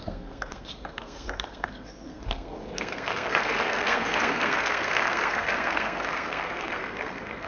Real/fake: fake